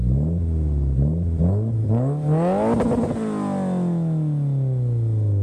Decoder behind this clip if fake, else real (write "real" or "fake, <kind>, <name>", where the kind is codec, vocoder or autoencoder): real